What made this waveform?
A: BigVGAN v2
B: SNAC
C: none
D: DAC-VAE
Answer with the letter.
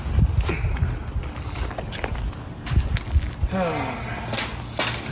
C